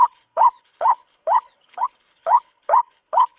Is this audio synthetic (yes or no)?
yes